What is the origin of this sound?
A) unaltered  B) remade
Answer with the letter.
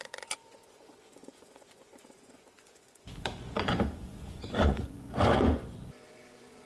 B